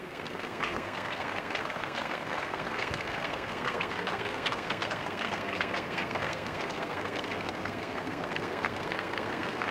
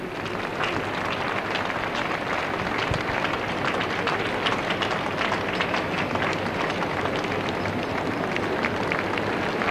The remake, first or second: first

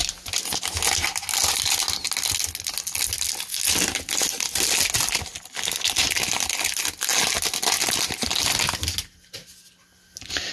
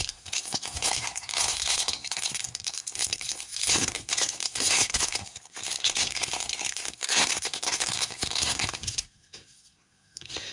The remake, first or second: second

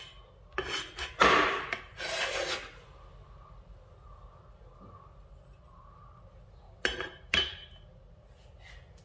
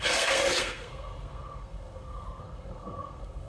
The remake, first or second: second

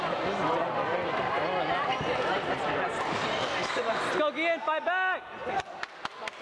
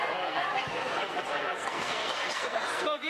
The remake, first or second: second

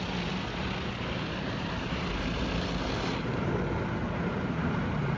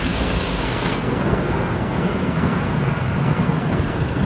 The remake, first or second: second